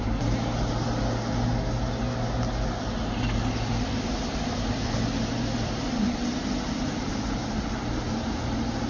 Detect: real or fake real